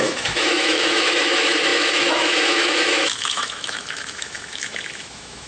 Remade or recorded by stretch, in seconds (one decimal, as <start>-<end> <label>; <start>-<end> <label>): 0.0-5.5 remade